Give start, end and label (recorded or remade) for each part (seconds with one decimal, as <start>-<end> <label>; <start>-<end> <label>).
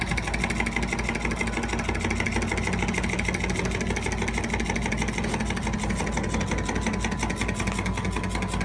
0.0-8.6 recorded